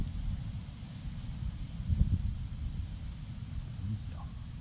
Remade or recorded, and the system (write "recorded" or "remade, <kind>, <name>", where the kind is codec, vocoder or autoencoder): recorded